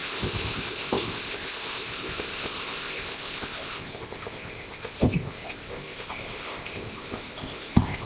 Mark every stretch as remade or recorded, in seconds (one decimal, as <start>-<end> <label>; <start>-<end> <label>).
0.0-8.1 remade